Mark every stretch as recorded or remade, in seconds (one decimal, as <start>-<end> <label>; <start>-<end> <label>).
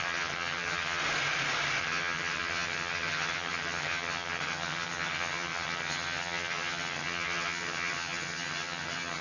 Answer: 0.0-1.0 remade; 1.0-1.8 recorded; 1.8-9.2 remade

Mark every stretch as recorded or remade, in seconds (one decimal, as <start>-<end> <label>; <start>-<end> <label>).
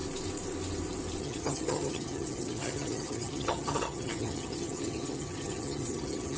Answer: 0.0-1.2 recorded; 1.2-6.4 remade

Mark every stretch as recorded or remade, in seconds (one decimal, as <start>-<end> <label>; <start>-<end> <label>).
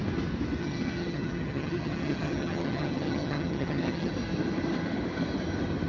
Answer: 0.0-0.6 recorded; 0.6-4.1 remade; 4.1-5.9 recorded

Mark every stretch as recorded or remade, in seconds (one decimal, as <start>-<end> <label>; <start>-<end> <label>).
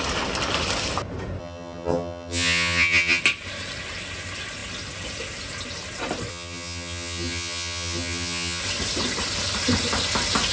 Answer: 0.0-1.4 recorded; 1.4-3.2 remade; 3.2-6.3 recorded; 6.3-8.6 remade; 8.6-10.5 recorded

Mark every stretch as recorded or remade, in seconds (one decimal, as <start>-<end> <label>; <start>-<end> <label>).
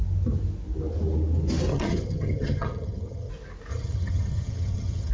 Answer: 0.0-1.7 recorded; 1.7-3.3 remade; 3.3-3.7 recorded; 3.7-5.1 remade